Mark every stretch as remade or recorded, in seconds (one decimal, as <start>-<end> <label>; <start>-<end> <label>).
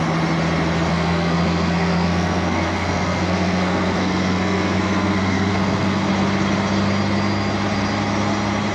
0.0-0.9 recorded; 0.9-6.1 remade; 6.1-8.7 recorded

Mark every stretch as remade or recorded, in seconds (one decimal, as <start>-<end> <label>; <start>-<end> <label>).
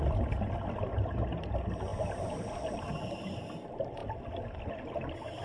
0.0-5.4 recorded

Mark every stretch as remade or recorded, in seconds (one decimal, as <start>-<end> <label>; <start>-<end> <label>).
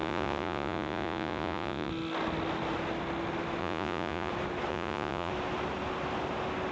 0.0-1.9 remade; 1.9-3.6 recorded; 3.6-4.3 remade; 4.3-4.7 recorded; 4.7-5.3 remade; 5.3-6.7 recorded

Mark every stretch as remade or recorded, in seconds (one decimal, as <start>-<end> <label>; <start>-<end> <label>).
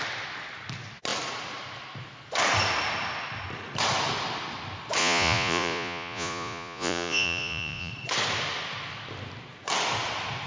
0.0-5.0 recorded; 5.0-7.9 remade; 7.9-10.5 recorded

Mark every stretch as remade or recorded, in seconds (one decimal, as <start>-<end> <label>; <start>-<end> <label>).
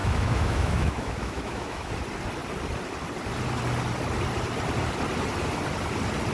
0.0-1.9 remade; 1.9-6.3 recorded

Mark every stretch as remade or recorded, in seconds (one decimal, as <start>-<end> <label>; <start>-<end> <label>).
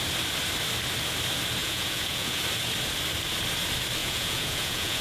0.0-1.6 recorded; 1.6-2.4 remade; 2.4-4.0 recorded; 4.0-5.0 remade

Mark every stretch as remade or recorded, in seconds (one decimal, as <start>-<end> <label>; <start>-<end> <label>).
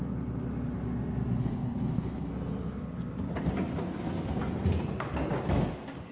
0.0-1.4 recorded; 1.4-2.3 remade; 2.3-6.1 recorded